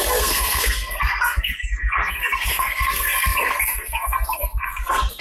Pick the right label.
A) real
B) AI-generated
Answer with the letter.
B